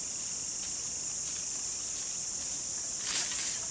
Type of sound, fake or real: real